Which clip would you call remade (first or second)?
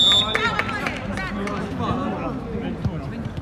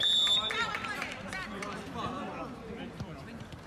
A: second